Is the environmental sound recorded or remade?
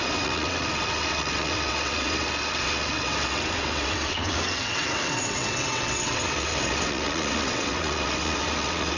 remade